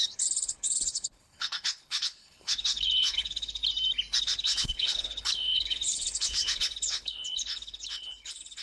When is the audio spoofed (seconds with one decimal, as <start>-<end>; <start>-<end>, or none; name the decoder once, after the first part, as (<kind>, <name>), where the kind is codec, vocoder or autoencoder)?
0.0-3.6 (codec, HILCodec); 4.2-8.6